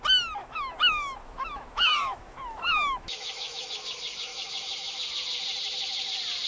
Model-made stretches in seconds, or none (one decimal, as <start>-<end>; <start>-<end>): 0.4-3.7; 4.3-4.9